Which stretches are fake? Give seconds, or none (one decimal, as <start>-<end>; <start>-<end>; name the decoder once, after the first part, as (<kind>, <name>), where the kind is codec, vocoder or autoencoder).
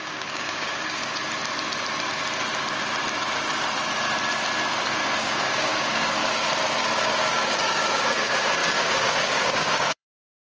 0.0-1.2 (codec, DAC); 5.2-6.2; 7.0-10.5